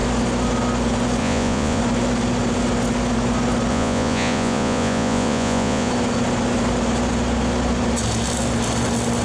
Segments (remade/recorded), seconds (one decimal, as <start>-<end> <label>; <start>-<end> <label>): 0.0-1.2 recorded; 1.2-1.8 remade; 1.8-3.7 recorded; 3.7-5.9 remade; 5.9-9.2 recorded